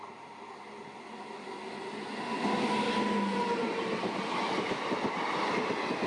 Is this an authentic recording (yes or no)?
yes